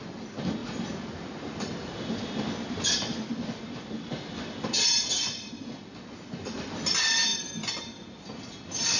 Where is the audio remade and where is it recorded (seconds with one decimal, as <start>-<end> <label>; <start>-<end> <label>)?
0.0-9.0 recorded